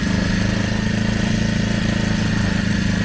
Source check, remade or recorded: recorded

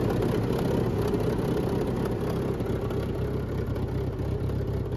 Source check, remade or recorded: recorded